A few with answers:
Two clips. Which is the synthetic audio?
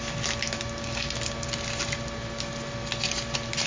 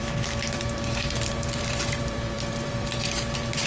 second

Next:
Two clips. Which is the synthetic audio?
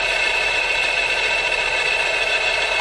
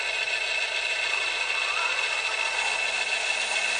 first